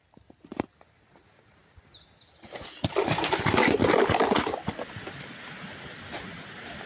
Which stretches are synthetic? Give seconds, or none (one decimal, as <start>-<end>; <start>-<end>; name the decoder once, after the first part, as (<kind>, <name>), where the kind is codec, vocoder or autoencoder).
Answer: none